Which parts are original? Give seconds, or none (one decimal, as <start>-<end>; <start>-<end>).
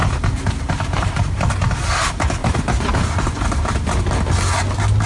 1.6-2.4; 4.3-5.1